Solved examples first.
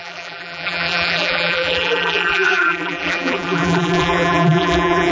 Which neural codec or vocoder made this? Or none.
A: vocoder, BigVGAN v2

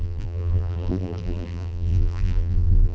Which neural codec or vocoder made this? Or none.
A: vocoder, BigVGAN v2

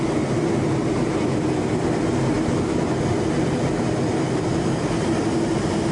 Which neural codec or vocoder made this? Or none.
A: none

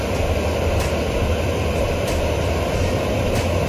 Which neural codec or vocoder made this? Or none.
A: none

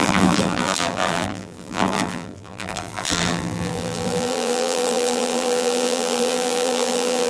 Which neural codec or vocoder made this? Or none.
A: vocoder, BigVGAN v2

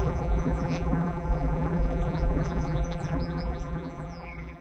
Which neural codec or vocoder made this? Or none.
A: vocoder, BigVGAN v2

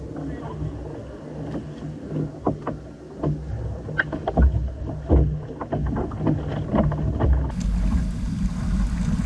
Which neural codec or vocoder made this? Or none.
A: none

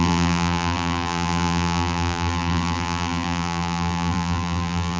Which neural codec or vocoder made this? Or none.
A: vocoder, BigVGAN v2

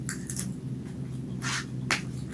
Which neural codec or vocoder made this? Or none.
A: none